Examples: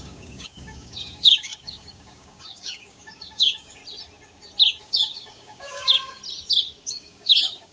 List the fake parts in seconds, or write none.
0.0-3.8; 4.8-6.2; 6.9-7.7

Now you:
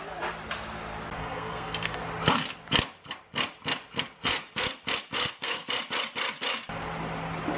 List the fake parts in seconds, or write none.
1.2-2.0; 5.2-5.8